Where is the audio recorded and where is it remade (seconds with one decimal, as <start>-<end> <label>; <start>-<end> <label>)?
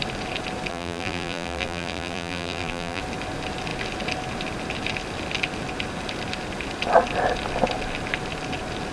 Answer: 0.0-0.7 recorded; 0.7-3.0 remade; 3.0-8.9 recorded